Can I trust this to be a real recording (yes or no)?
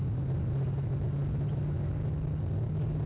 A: yes